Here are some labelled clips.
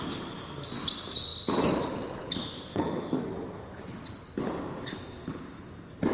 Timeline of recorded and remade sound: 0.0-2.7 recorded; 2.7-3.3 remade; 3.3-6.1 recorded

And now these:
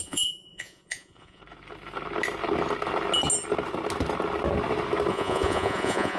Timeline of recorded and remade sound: 0.0-1.4 remade; 1.4-5.1 recorded; 5.1-6.2 remade

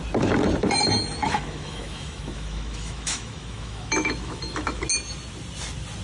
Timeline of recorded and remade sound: 0.0-1.2 recorded; 1.2-4.8 remade; 4.8-6.0 recorded

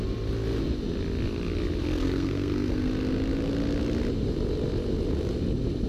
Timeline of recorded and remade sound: 0.0-2.0 recorded; 2.0-2.9 remade; 2.9-5.9 recorded

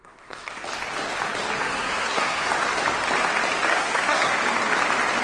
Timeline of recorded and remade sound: 0.0-0.5 remade; 0.5-1.6 recorded; 1.6-2.5 remade; 2.5-3.7 recorded; 3.7-4.4 remade; 4.4-5.2 recorded

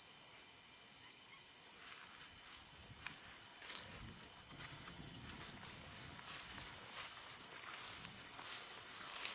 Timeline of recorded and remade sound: 0.0-4.4 recorded; 4.4-5.2 remade; 5.2-9.3 recorded